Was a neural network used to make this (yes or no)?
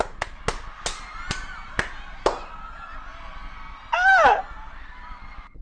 no